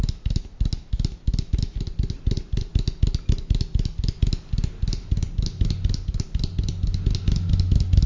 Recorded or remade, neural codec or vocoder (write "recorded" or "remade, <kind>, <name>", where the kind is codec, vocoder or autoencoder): recorded